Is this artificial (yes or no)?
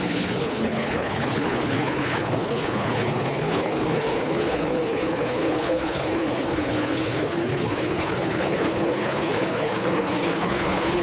yes